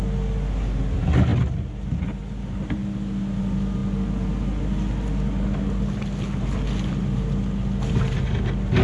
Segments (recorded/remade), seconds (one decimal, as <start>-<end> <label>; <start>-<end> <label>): 0.0-8.8 recorded

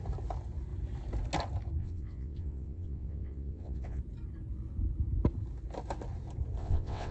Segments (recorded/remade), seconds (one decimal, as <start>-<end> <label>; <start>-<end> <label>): 0.0-1.8 recorded; 1.8-4.0 remade; 4.0-6.6 recorded; 6.6-7.1 remade

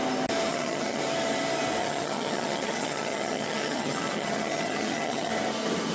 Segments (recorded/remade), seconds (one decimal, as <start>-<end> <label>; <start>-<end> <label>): 0.0-0.5 recorded; 0.5-1.0 remade; 1.0-1.8 recorded; 1.8-5.3 remade; 5.3-5.9 recorded

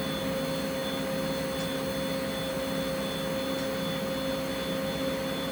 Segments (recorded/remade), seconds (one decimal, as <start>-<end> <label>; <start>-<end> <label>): 0.0-5.5 recorded

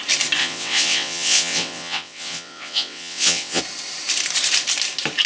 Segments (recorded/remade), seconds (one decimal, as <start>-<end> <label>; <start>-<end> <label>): 0.0-0.4 recorded; 0.4-3.6 remade; 3.6-5.3 recorded

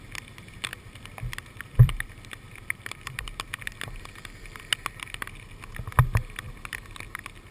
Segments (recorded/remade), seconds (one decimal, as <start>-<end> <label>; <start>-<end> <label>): 0.0-0.7 recorded; 0.7-4.0 remade; 4.0-7.5 recorded

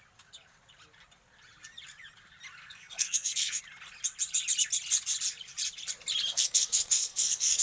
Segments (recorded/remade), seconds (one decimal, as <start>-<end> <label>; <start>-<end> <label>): 0.0-2.6 recorded; 2.6-3.6 remade; 3.6-6.3 recorded; 6.3-7.6 remade